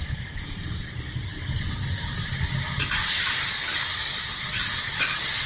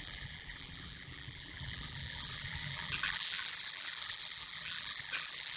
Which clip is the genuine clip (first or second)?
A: first